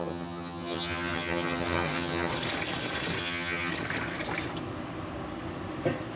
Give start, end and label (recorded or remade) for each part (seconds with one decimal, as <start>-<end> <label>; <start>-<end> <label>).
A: 0.0-2.3 remade; 2.3-3.2 recorded; 3.2-3.7 remade; 3.7-6.2 recorded

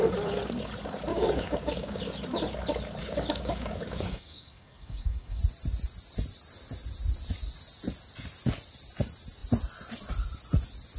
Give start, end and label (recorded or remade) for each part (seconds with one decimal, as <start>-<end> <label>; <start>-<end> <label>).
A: 0.0-1.1 recorded; 1.1-2.0 remade; 2.0-3.0 recorded; 3.0-5.4 remade; 5.4-11.0 recorded

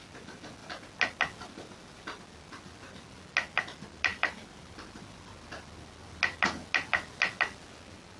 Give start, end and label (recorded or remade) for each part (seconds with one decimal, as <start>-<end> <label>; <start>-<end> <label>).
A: 0.0-4.1 recorded; 4.1-5.0 remade; 5.0-8.2 recorded

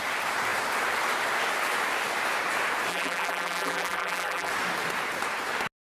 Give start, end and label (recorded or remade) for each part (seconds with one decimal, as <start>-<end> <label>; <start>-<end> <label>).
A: 0.0-2.9 recorded; 2.9-4.5 remade; 4.5-5.9 recorded

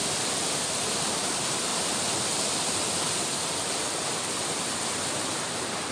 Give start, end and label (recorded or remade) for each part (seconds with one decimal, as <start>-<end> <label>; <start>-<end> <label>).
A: 0.0-0.9 recorded; 0.9-1.7 remade; 1.7-5.2 recorded; 5.2-5.9 remade

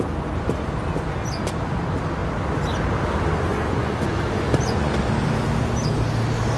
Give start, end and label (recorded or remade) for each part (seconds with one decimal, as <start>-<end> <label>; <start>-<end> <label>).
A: 0.0-3.5 recorded; 3.5-5.0 remade; 5.0-6.6 recorded

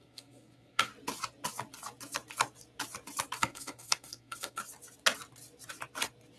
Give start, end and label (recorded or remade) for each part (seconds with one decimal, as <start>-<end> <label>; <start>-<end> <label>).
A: 0.0-0.9 remade; 0.9-3.4 recorded; 3.4-4.6 remade; 4.6-6.4 recorded